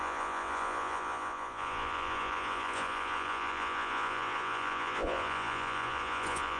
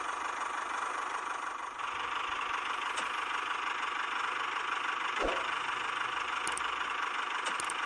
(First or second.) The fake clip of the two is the first